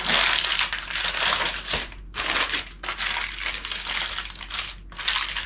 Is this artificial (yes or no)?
no